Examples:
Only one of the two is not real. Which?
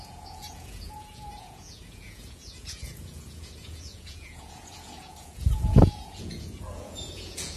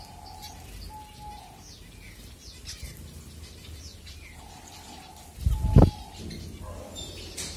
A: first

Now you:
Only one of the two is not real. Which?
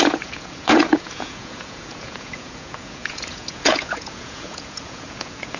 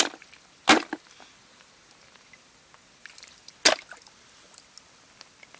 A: first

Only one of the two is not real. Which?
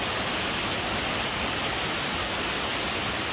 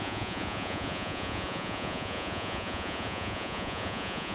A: second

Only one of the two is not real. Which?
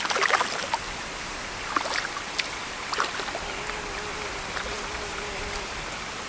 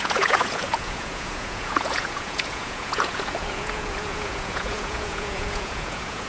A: second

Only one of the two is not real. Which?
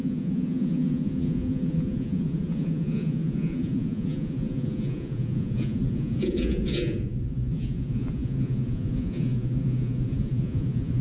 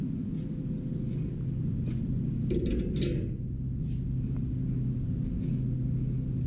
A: first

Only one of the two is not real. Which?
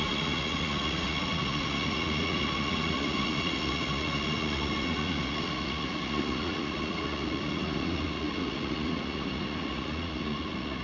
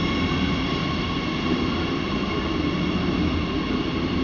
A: first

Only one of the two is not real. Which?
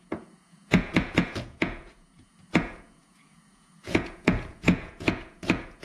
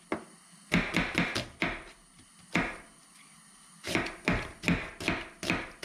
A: first